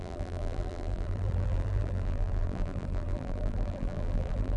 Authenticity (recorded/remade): remade